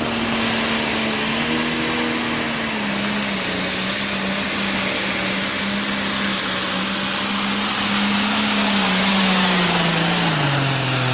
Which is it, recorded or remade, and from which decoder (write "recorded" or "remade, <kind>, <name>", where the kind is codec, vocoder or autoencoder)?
recorded